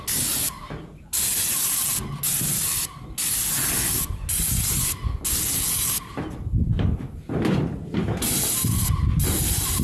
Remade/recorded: recorded